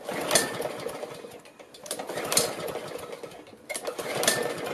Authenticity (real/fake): real